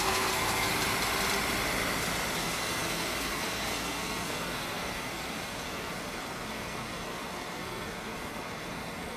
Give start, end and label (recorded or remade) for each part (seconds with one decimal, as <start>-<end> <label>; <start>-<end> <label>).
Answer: 0.0-0.7 remade; 0.7-2.4 recorded; 2.4-9.2 remade

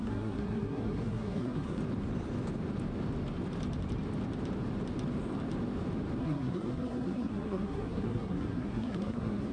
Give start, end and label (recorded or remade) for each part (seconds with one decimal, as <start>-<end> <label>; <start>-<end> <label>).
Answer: 0.0-1.8 remade; 1.8-6.2 recorded; 6.2-9.5 remade

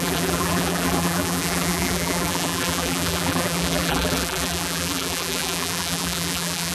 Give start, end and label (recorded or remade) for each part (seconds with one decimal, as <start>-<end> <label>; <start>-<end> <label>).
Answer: 0.0-6.7 remade

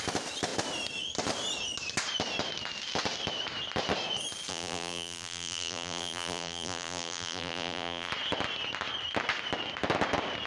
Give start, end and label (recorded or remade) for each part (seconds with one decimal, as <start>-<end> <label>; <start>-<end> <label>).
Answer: 0.0-4.5 recorded; 4.5-8.1 remade; 8.1-10.5 recorded

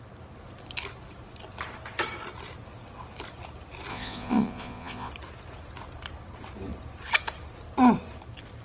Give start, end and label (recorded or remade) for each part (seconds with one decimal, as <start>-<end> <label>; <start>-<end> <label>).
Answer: 0.0-3.9 recorded; 3.9-5.1 remade; 5.1-8.6 recorded

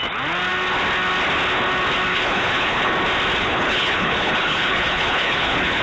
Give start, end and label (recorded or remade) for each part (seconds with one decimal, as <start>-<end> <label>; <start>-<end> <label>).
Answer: 0.0-2.1 recorded; 2.1-2.9 remade; 2.9-3.4 recorded; 3.4-5.8 remade